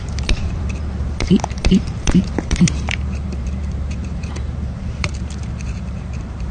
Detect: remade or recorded remade